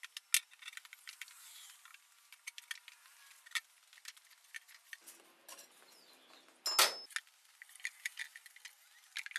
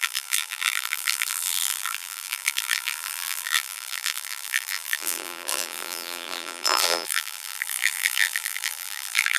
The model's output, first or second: second